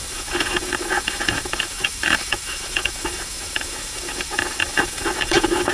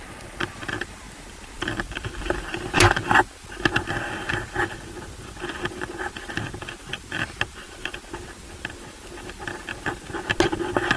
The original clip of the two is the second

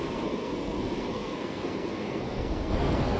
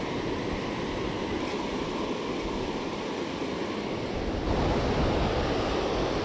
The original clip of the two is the second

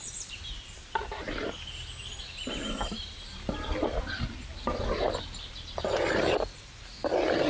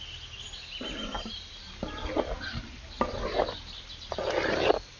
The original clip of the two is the second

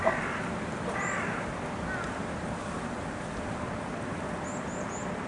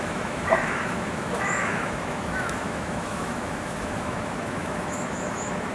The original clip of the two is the first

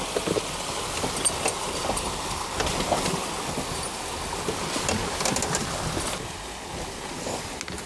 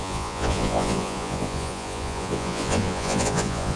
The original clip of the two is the first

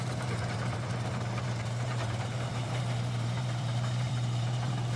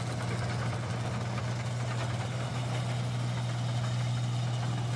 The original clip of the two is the second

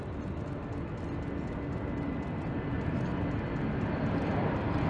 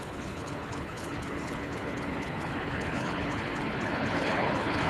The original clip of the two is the first